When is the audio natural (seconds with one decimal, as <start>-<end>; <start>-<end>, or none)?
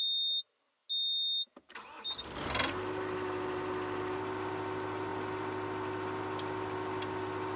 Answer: 0.0-7.6